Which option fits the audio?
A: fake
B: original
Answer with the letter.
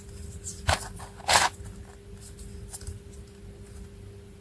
B